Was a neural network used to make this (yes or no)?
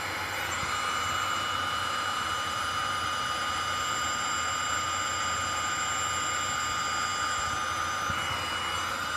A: yes